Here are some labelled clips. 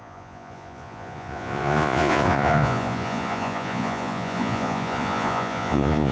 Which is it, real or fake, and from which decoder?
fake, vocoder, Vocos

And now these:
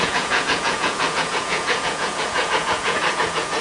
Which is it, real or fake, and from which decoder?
fake, vocoder, Vocos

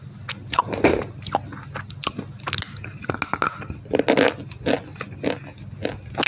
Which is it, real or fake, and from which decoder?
real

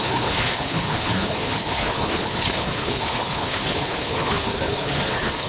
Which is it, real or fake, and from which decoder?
fake, codec, HILCodec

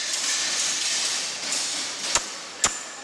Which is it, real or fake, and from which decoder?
real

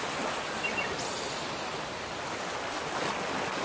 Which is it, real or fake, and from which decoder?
real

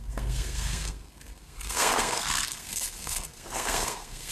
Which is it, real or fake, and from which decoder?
fake, codec, SNAC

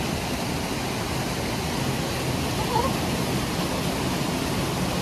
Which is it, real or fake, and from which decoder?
real